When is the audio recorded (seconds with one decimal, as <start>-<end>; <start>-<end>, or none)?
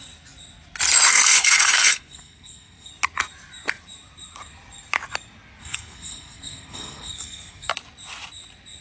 0.0-1.1; 2.9-5.6; 7.7-8.8